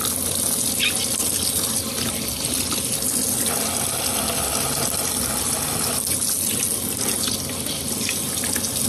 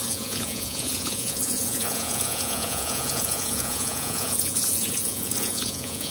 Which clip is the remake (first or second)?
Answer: second